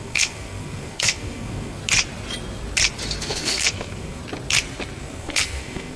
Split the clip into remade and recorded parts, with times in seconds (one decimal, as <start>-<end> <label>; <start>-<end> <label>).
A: 0.0-1.8 remade; 1.8-3.2 recorded; 3.2-4.2 remade; 4.2-5.0 recorded; 5.0-6.0 remade